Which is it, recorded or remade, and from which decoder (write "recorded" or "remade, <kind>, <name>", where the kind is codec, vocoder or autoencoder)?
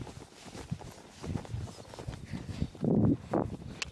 recorded